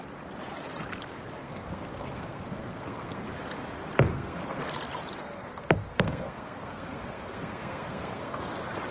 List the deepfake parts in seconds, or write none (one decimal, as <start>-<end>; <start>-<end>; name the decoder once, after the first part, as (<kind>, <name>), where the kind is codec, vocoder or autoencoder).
1.4-3.2 (codec, SNAC); 4.1-4.6; 5.2-8.4